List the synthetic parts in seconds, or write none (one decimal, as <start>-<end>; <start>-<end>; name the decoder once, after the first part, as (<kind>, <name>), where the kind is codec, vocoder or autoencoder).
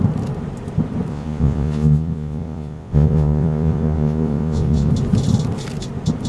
1.1-4.9 (vocoder, Vocos)